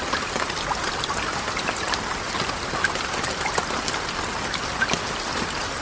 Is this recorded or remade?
recorded